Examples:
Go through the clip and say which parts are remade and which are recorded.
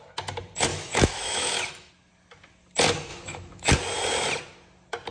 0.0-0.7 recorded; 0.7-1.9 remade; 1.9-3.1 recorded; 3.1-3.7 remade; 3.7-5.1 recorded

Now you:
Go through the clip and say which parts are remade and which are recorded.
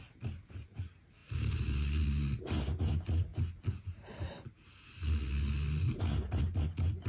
0.0-1.2 remade; 1.2-2.8 recorded; 2.8-3.3 remade; 3.3-7.1 recorded